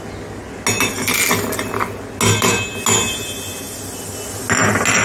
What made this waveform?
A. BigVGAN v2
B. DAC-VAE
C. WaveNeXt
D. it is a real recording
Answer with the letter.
D